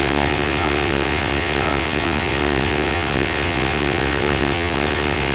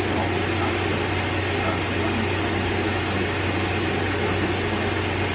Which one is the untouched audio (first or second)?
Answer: second